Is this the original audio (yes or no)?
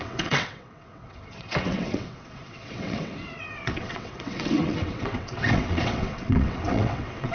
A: no